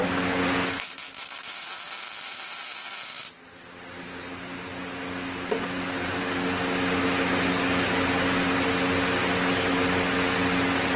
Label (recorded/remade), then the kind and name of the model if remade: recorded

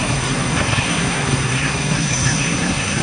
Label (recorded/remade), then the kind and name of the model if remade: remade, codec, SNAC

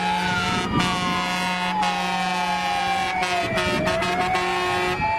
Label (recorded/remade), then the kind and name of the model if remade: recorded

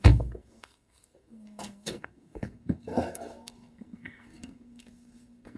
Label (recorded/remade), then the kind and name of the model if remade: remade, codec, SNAC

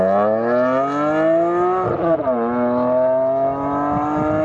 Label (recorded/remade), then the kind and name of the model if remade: recorded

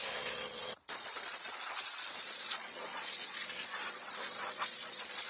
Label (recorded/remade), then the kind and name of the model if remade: remade, vocoder, Vocos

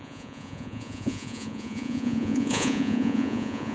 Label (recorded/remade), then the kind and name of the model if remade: remade, vocoder, Vocos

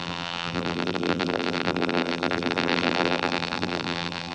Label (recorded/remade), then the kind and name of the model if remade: remade, vocoder, BigVGAN v2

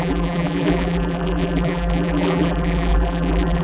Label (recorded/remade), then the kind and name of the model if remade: remade, vocoder, BigVGAN v2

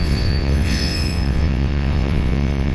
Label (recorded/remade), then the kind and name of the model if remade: remade, vocoder, WaveNeXt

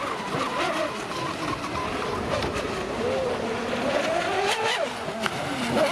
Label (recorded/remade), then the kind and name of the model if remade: recorded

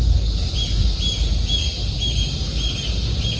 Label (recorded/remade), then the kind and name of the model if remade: recorded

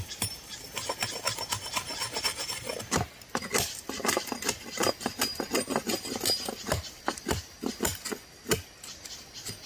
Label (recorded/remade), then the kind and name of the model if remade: recorded